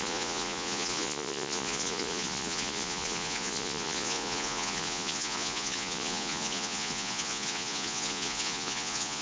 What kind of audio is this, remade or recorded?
remade